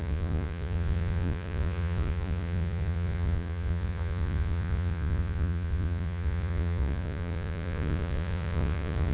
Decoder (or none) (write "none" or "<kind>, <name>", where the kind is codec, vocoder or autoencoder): vocoder, Vocos